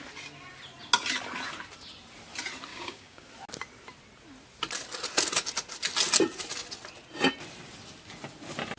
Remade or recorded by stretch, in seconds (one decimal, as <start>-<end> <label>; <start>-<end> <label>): 0.0-2.7 recorded; 2.7-3.3 remade; 3.3-8.8 recorded